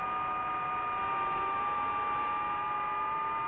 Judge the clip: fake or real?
real